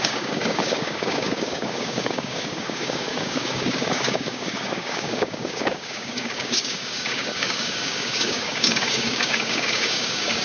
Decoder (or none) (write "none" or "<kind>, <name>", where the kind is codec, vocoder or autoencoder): codec, DAC